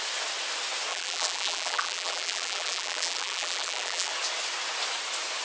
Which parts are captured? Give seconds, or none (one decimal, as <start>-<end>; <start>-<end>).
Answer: 0.0-0.9; 4.1-5.4